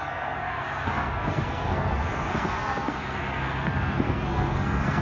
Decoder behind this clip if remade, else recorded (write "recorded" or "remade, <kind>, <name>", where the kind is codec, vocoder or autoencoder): remade, codec, SNAC